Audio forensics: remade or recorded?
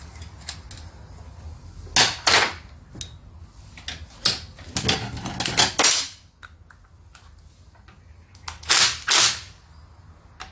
recorded